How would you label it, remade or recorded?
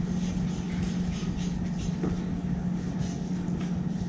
recorded